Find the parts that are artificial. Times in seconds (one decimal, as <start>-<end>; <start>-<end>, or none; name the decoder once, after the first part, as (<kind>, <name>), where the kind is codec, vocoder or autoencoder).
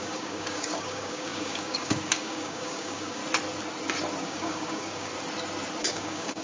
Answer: 0.0-3.2 (codec, DAC); 4.2-5.1; 5.8-6.4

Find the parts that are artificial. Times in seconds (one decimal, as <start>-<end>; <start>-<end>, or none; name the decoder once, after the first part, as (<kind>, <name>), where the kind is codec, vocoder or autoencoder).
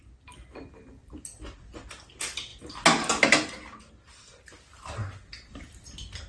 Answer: none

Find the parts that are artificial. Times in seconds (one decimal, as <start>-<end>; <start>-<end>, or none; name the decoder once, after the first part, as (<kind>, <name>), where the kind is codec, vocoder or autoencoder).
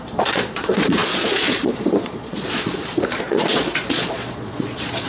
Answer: 0.0-5.1 (vocoder, Vocos)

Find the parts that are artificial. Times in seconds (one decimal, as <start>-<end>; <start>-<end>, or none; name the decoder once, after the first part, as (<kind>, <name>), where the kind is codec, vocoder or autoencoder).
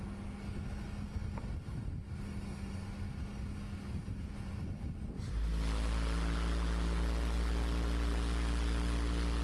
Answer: none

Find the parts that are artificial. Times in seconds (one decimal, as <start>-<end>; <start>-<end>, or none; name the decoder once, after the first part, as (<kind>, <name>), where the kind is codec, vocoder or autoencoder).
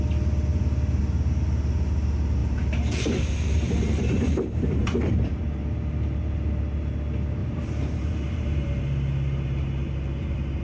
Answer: 2.4-5.4 (vocoder, BigVGAN v2); 7.4-8.8